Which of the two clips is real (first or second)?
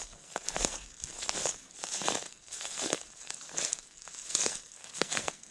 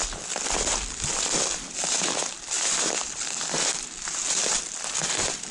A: second